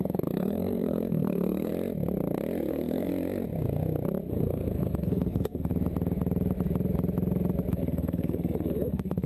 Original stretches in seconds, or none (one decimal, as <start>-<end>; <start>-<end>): 1.7-2.7; 3.1-4.3; 5.7-7.7